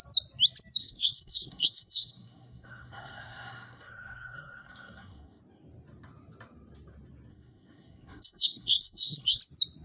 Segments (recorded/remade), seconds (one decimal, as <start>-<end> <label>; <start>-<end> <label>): 0.0-0.8 recorded; 0.8-5.4 remade; 5.4-7.3 recorded; 7.3-9.4 remade; 9.4-9.8 recorded